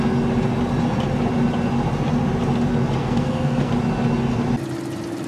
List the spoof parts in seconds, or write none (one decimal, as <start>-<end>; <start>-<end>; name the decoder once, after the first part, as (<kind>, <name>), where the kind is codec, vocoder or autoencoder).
3.0-3.7 (codec, SNAC)